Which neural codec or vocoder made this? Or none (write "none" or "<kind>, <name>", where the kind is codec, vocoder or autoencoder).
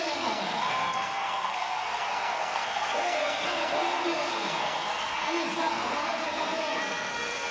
codec, SNAC